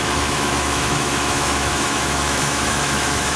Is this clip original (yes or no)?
no